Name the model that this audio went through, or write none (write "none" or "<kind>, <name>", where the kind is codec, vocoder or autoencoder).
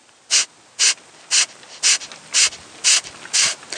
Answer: none